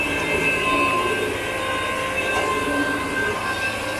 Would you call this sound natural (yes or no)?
yes